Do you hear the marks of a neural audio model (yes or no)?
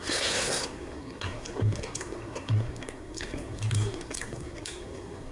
yes